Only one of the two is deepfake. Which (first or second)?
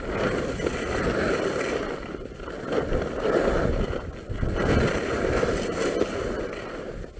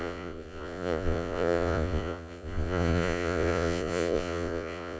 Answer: second